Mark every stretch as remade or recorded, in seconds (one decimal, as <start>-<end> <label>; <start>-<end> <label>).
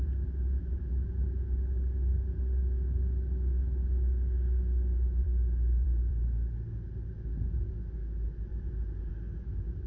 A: 0.0-0.9 remade; 0.9-5.2 recorded; 5.2-6.2 remade; 6.2-8.5 recorded; 8.5-9.1 remade; 9.1-9.9 recorded